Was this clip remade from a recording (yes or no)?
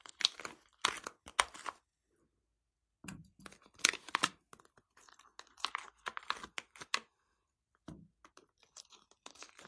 no